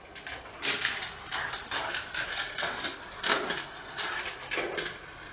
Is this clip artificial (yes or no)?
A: no